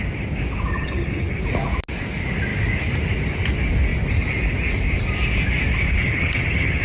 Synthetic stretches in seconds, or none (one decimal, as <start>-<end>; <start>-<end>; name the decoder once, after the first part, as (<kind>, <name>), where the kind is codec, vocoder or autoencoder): 0.7-1.4 (vocoder, HiFi-GAN); 6.0-6.8

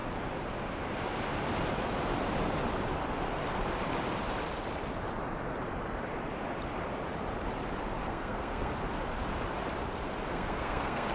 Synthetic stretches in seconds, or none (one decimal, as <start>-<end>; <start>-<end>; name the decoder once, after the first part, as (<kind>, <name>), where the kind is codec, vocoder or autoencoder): 8.0-8.7 (codec, SNAC); 10.3-11.1

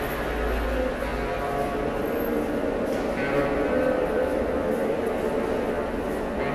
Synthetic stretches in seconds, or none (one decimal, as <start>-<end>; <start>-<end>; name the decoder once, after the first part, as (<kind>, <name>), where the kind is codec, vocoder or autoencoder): 1.1-5.0 (vocoder, BigVGAN v2)

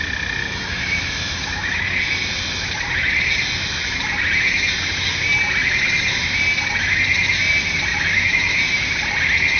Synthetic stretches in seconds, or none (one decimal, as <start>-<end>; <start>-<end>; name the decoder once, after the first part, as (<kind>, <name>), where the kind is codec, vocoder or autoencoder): 0.4-1.8 (autoencoder, DAC-VAE); 7.9-8.6